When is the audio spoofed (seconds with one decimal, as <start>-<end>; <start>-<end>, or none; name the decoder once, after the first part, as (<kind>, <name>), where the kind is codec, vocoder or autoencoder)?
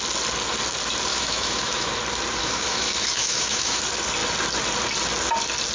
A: 1.1-1.9 (autoencoder, DAC-VAE); 2.4-3.8